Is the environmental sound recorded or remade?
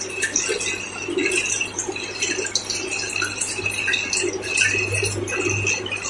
recorded